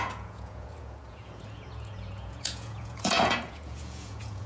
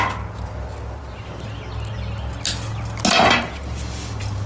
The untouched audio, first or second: second